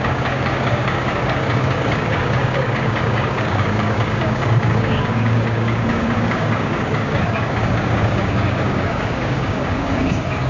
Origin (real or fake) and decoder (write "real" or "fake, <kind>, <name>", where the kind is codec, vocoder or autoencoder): fake, codec, DAC